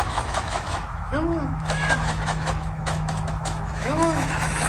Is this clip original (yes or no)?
no